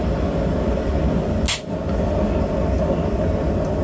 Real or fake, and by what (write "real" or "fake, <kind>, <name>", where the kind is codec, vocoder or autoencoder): real